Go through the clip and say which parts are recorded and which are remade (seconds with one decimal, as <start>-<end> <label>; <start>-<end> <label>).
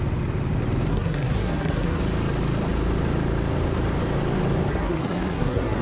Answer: 0.0-0.9 recorded; 0.9-2.0 remade; 2.0-4.7 recorded; 4.7-5.8 remade